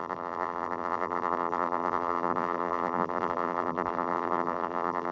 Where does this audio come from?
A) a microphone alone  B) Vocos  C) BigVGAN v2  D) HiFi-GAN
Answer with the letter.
C